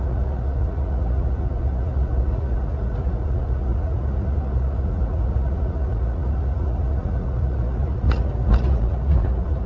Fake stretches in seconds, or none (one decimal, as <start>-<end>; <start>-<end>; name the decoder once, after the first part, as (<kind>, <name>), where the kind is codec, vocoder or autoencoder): 0.0-9.7 (vocoder, Vocos)